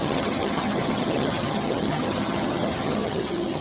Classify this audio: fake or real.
fake